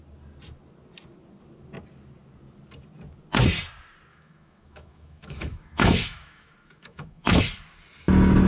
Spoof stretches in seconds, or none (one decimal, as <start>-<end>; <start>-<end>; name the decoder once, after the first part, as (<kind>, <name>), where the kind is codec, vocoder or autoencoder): 4.1-7.4 (autoencoder, DAC-VAE)